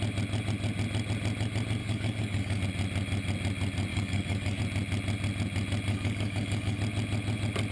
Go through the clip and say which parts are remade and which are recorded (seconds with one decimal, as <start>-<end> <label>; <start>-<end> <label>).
0.0-1.8 recorded; 1.8-2.6 remade; 2.6-3.9 recorded; 3.9-4.6 remade; 4.6-5.9 recorded; 5.9-6.8 remade; 6.8-7.7 recorded